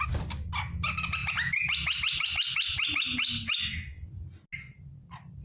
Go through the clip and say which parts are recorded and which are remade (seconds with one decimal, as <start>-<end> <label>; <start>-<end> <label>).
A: 0.0-5.4 recorded